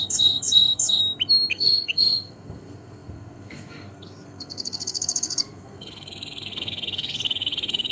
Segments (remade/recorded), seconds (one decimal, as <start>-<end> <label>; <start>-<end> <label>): 0.0-1.0 remade; 1.0-1.5 recorded; 1.5-7.9 remade